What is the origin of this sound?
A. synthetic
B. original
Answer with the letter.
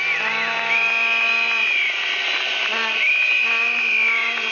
B